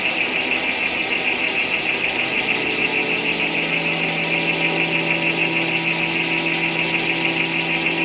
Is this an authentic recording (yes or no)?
yes